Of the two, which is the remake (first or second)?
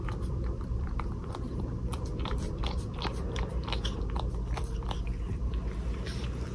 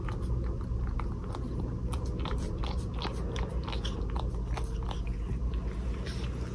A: first